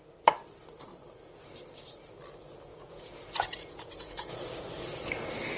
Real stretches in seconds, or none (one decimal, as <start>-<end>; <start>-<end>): 0.0-2.7; 4.5-5.6